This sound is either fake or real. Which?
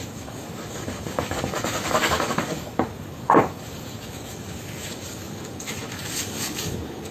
fake